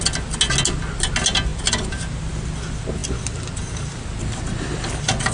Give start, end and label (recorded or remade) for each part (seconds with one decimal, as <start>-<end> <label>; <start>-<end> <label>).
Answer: 0.0-5.3 recorded